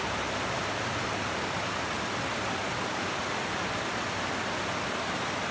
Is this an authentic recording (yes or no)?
yes